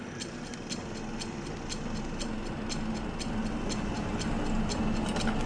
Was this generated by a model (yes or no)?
no